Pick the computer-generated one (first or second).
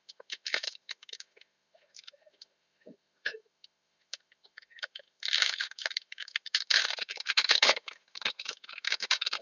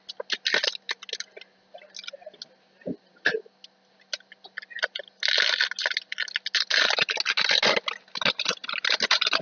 first